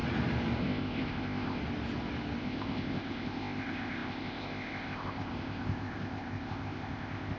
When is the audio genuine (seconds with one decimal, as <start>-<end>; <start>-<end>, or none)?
0.0-0.6; 1.6-2.4